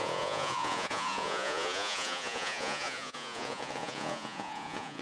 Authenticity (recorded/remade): remade